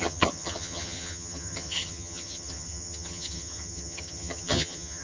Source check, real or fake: fake